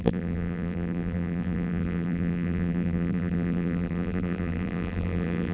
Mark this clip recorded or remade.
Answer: remade